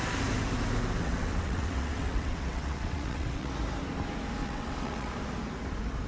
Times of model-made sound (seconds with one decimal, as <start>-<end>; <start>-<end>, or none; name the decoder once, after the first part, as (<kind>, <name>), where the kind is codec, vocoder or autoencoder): 1.0-3.5 (vocoder, WaveNeXt); 4.4-5.1